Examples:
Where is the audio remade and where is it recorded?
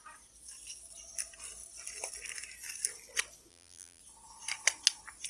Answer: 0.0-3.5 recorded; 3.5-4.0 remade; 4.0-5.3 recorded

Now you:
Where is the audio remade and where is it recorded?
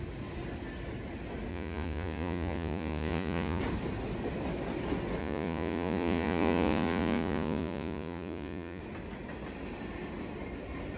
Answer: 0.0-1.5 recorded; 1.5-3.6 remade; 3.6-5.2 recorded; 5.2-8.8 remade; 8.8-11.0 recorded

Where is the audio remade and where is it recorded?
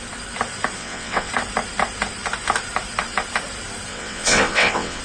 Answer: 0.0-0.8 recorded; 0.8-1.3 remade; 1.3-3.9 recorded; 3.9-5.0 remade